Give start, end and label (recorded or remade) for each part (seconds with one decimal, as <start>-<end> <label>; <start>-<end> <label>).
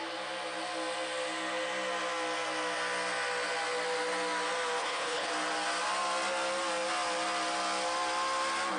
0.0-4.8 recorded; 4.8-5.3 remade; 5.3-8.8 recorded